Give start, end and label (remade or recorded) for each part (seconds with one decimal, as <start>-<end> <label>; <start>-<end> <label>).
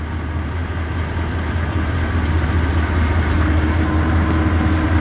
0.0-5.0 recorded